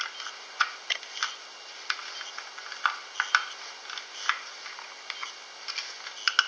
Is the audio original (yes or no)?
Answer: yes